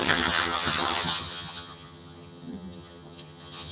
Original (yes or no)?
no